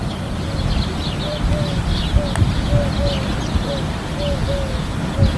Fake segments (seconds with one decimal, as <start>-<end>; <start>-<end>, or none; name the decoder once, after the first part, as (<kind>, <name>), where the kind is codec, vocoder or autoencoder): none